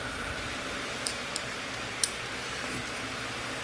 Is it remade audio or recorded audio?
remade